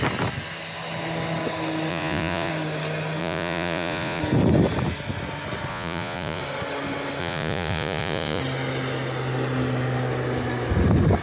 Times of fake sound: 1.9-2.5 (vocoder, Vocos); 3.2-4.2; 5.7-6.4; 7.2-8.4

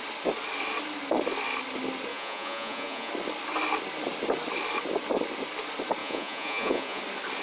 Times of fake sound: 2.1-3.1 (vocoder, Vocos); 6.0-7.0

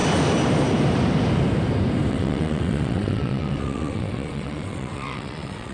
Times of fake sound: 2.1-5.7 (vocoder, WaveNeXt)

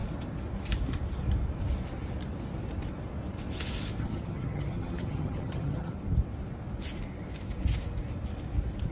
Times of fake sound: 4.0-5.9 (vocoder, HiFi-GAN)

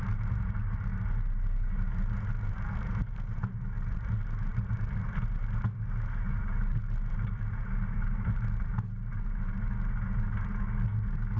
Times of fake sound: none

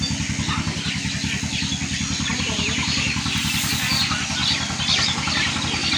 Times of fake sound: 2.3-3.7 (vocoder, BigVGAN v2)